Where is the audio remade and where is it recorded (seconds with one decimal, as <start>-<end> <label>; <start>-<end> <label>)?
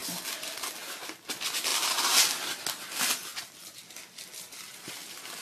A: 0.0-3.3 recorded; 3.3-4.7 remade; 4.7-5.4 recorded